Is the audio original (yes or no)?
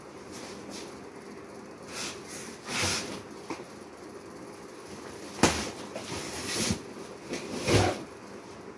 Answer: yes